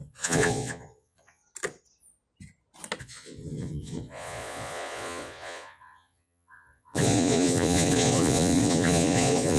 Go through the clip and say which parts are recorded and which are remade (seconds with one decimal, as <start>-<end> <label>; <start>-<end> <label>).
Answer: 0.0-1.4 remade; 1.4-3.0 recorded; 3.0-9.6 remade